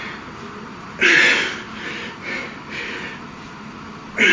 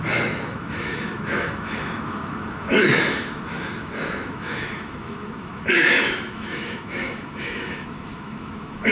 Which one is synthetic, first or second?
second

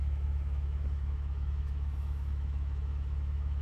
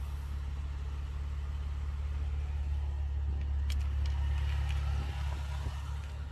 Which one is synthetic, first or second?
first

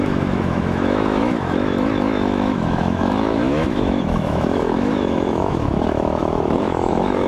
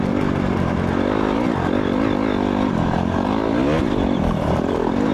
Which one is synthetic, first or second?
first